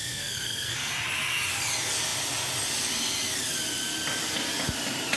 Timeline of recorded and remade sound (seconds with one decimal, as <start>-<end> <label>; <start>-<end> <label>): 0.0-0.9 remade; 0.9-5.2 recorded